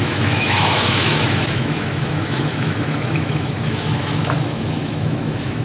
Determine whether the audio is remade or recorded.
remade